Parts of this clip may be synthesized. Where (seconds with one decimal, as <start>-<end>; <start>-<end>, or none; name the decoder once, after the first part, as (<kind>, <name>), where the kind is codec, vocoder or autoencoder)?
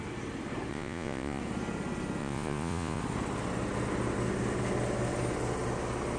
0.7-1.4 (vocoder, Vocos); 2.2-3.0